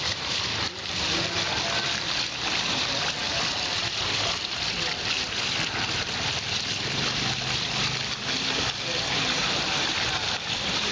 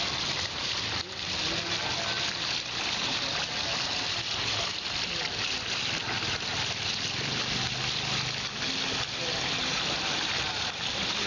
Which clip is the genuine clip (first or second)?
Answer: second